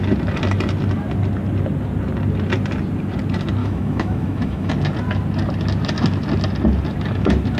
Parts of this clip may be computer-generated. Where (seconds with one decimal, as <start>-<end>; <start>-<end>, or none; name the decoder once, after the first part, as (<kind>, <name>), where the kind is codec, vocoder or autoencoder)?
3.6-4.7 (autoencoder, DAC-VAE)